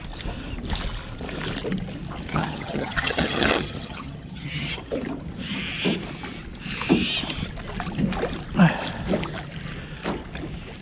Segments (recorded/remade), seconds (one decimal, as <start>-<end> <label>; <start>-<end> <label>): 0.0-2.3 recorded; 2.3-4.8 remade; 4.8-10.8 recorded